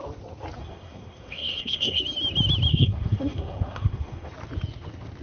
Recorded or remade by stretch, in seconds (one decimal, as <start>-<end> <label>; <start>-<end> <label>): 0.0-0.6 recorded; 0.6-2.0 remade; 2.0-2.7 recorded; 2.7-4.3 remade; 4.3-5.2 recorded